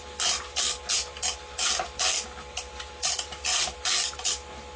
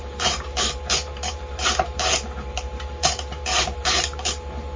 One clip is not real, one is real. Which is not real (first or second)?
second